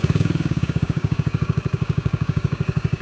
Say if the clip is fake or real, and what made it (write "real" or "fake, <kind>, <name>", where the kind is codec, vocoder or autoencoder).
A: fake, codec, DAC